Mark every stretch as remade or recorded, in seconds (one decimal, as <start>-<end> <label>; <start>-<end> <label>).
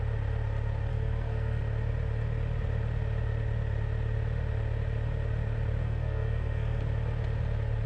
0.0-0.9 recorded; 0.9-1.6 remade; 1.6-5.8 recorded; 5.8-6.8 remade; 6.8-7.9 recorded